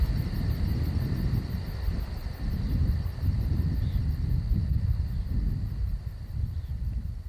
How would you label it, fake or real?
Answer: real